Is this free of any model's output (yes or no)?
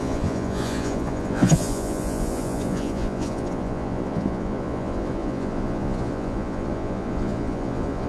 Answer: no